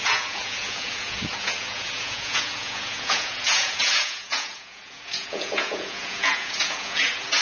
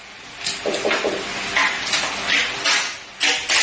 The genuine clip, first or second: second